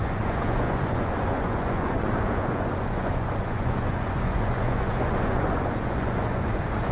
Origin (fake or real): fake